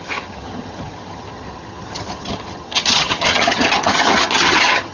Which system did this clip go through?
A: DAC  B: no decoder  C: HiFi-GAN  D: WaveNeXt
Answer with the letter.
C